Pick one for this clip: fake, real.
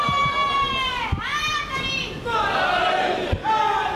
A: real